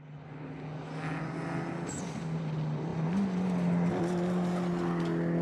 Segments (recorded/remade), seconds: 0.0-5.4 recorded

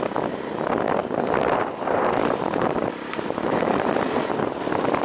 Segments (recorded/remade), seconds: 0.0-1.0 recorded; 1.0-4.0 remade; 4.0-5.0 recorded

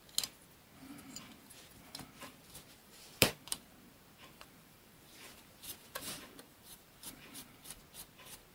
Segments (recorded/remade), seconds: 0.0-2.8 recorded; 2.8-7.8 remade; 7.8-8.5 recorded

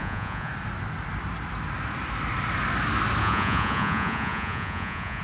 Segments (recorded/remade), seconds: 0.0-0.5 remade; 0.5-3.2 recorded; 3.2-5.2 remade

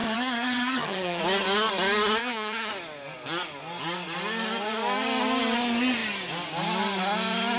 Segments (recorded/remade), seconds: 0.0-1.2 remade; 1.2-2.2 recorded; 2.2-2.7 remade; 2.7-7.6 recorded

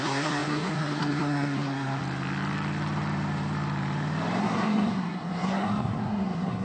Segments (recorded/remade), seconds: 0.0-2.0 remade; 2.0-4.4 recorded; 4.4-6.6 remade